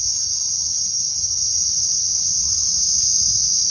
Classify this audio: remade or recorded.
recorded